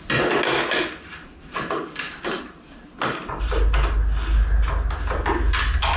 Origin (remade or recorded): recorded